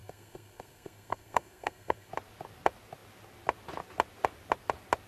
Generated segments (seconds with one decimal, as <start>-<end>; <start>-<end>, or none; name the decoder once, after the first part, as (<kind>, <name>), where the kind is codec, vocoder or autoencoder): 0.0-2.1 (codec, SNAC)